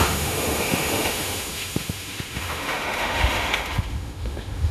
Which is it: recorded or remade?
remade